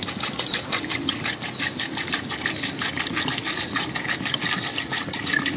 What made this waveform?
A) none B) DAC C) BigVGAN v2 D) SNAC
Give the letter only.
A